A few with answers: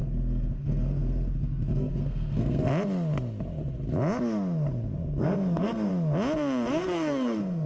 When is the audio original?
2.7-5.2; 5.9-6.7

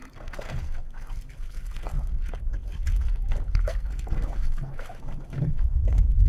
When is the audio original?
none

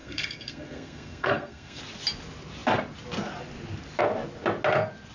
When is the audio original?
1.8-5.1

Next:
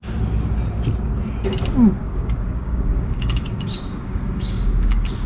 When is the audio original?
0.0-2.0